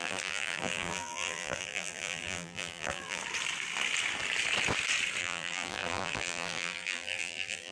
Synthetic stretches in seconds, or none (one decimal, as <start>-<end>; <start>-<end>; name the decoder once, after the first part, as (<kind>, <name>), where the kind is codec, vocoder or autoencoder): 0.0-3.2 (vocoder, BigVGAN v2); 5.2-7.7

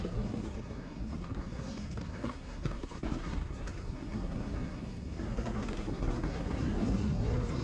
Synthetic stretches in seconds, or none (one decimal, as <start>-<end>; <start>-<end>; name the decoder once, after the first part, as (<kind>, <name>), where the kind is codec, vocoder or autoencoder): 0.0-7.6 (codec, SNAC)

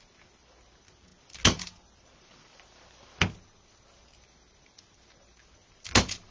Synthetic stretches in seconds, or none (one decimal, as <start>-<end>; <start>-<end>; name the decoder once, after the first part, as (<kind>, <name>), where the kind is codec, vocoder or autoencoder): none

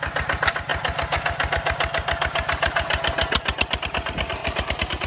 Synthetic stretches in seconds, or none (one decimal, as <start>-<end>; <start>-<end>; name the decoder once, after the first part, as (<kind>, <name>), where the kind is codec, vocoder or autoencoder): 4.4-5.1 (vocoder, BigVGAN v2)

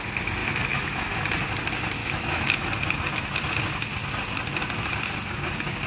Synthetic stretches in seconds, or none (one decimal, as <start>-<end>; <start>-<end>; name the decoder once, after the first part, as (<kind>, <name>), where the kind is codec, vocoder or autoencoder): 0.4-1.2 (autoencoder, DAC-VAE); 2.0-2.7

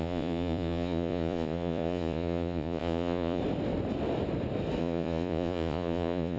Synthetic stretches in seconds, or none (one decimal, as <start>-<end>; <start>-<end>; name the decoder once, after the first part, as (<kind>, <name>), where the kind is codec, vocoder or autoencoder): 0.0-3.4 (vocoder, Vocos); 4.8-6.4